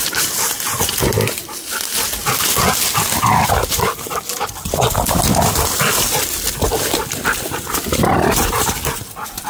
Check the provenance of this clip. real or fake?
real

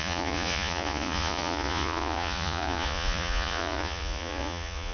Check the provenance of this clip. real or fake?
fake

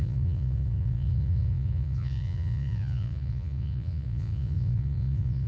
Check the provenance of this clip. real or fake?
fake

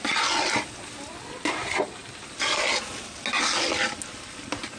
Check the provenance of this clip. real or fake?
real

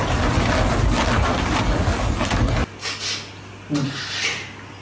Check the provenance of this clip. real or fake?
real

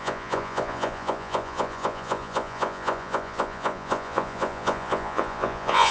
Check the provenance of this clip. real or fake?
fake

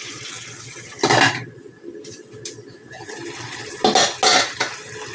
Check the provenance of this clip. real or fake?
real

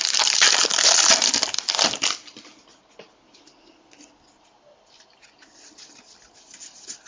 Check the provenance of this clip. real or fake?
real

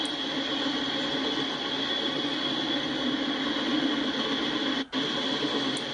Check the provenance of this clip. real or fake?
real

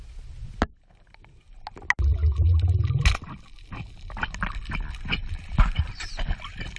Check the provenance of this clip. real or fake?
real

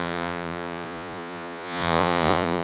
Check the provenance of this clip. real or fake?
fake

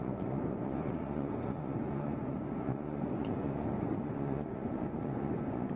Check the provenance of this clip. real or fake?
fake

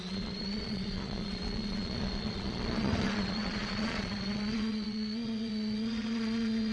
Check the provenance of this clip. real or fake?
fake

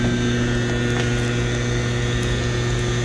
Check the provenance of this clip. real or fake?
real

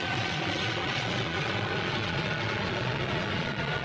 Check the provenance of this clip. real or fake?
fake